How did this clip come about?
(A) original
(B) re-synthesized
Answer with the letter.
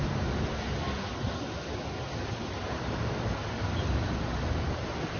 A